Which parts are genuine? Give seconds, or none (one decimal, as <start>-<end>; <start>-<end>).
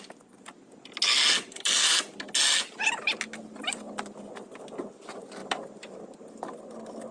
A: 0.0-5.4; 6.0-7.1